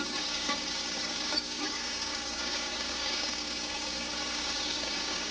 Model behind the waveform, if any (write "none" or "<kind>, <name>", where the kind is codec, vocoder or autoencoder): codec, DAC